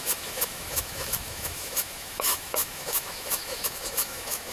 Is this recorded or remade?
remade